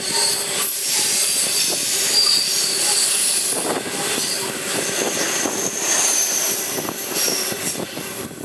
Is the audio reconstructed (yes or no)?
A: yes